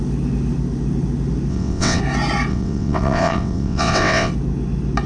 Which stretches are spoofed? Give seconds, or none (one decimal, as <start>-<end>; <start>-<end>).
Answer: 1.5-2.0; 2.5-4.3